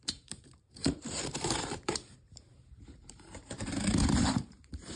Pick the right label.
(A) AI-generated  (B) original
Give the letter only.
A